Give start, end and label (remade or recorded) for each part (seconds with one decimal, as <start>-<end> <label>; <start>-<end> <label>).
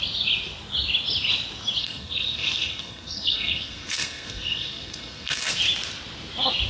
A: 0.0-1.8 recorded; 1.8-5.6 remade; 5.6-6.7 recorded